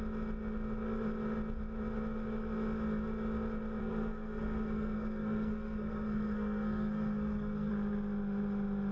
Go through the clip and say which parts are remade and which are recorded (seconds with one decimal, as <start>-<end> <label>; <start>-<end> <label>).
0.0-3.8 recorded; 3.8-7.7 remade; 7.7-8.9 recorded